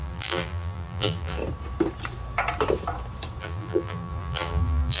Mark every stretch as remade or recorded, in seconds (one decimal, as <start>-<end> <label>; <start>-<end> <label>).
0.0-1.4 remade; 1.4-3.4 recorded; 3.4-5.0 remade